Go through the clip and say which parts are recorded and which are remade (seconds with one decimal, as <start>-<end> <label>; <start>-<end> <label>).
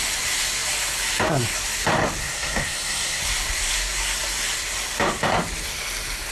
0.0-2.2 recorded; 2.2-3.2 remade; 3.2-6.3 recorded